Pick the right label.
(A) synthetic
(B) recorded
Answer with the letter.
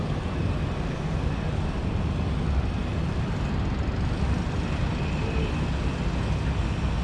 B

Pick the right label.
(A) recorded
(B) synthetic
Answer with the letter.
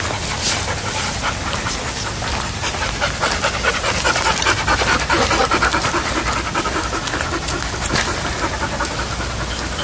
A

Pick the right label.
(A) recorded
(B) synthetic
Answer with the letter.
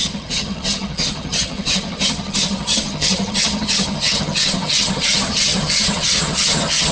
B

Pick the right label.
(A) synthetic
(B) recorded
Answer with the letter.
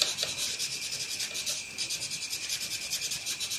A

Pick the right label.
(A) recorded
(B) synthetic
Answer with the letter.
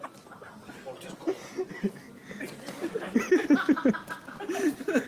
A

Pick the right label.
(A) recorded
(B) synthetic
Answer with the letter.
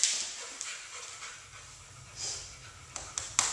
A